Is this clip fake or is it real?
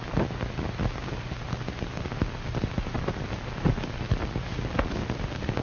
real